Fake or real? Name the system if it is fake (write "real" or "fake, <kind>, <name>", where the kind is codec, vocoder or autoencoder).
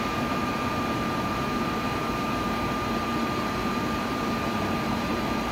fake, vocoder, BigVGAN v2